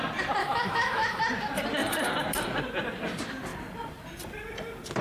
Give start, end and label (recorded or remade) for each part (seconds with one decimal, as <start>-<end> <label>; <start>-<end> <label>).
0.0-0.4 recorded; 0.4-1.2 remade; 1.2-5.0 recorded